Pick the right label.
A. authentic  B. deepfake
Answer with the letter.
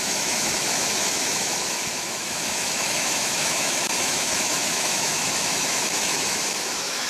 B